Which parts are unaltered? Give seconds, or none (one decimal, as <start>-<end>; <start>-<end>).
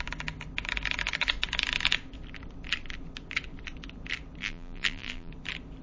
0.0-4.4; 5.3-5.8